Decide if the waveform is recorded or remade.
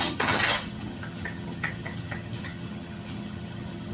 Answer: remade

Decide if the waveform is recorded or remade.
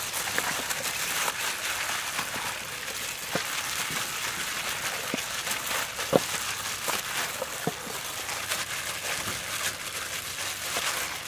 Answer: recorded